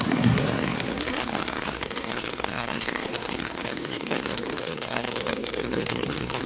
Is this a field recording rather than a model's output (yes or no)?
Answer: no